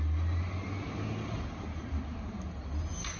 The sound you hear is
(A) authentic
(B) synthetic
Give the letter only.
A